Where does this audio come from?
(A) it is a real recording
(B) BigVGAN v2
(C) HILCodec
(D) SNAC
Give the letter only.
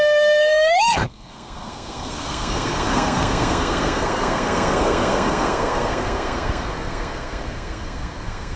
D